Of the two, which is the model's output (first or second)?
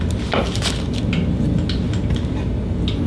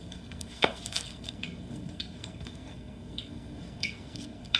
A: second